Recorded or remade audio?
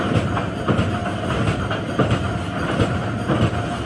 recorded